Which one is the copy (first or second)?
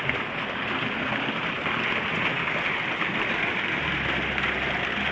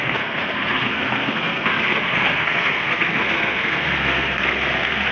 second